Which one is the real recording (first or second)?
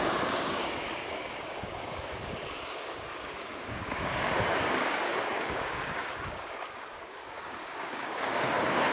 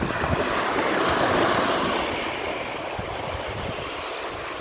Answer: second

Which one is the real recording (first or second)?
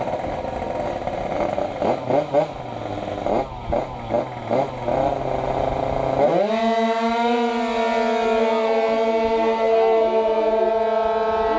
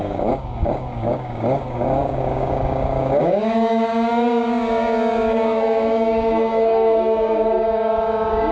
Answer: first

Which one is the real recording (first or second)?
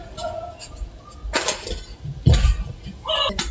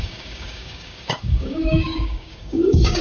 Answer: first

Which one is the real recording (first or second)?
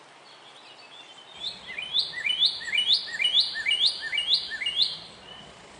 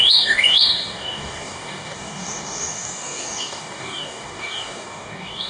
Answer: first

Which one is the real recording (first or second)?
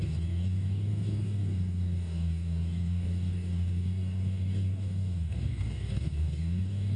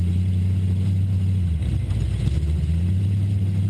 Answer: second